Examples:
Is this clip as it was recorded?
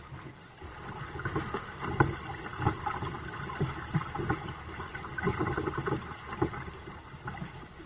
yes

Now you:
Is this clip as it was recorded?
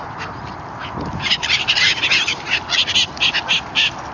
yes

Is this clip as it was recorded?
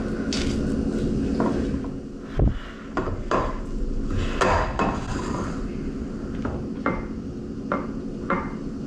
yes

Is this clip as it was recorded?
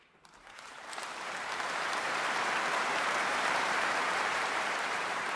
no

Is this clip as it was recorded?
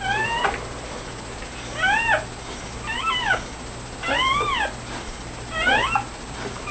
yes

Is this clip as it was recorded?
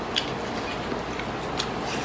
yes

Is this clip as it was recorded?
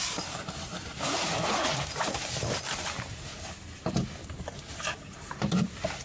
no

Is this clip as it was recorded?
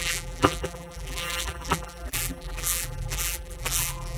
no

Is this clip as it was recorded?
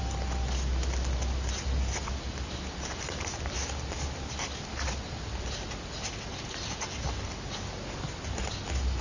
yes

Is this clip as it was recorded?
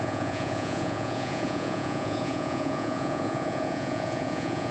no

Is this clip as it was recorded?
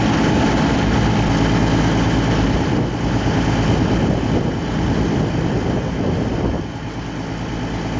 yes